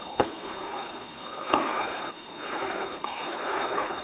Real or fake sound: fake